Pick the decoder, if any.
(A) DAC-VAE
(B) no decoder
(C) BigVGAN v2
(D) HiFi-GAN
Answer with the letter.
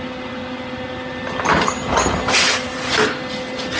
B